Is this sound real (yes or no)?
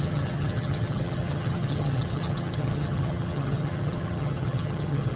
no